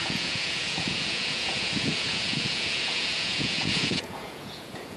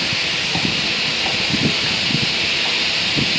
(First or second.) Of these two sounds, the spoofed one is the first